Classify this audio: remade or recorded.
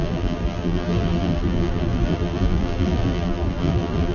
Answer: remade